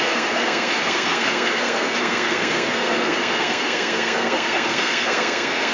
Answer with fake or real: fake